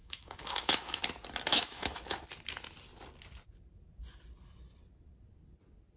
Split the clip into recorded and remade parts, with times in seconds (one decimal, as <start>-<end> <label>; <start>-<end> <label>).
0.0-1.0 remade; 1.0-1.5 recorded; 1.5-2.2 remade; 2.2-6.0 recorded